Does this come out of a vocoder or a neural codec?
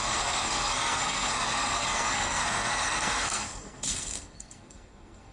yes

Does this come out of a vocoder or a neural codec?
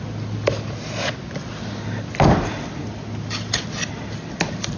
no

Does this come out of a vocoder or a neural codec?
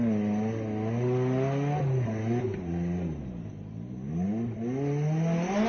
no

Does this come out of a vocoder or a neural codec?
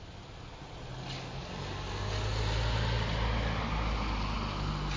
no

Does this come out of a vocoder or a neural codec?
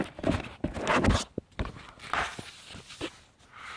no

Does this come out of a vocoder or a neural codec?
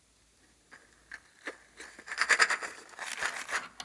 no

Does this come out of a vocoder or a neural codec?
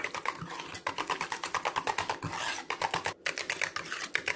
no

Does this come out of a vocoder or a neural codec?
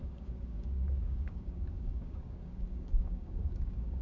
yes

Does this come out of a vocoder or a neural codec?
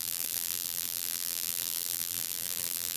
yes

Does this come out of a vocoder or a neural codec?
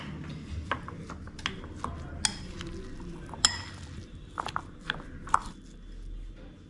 no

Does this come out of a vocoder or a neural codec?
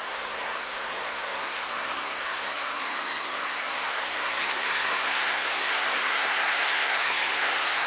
yes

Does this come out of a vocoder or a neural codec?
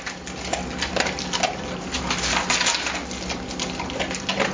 no